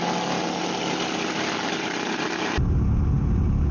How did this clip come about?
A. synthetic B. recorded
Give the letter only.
B